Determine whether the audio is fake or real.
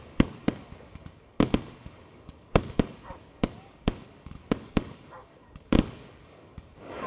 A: fake